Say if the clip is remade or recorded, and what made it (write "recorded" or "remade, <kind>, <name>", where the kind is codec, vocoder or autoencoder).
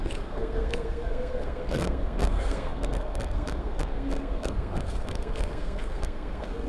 remade, codec, SNAC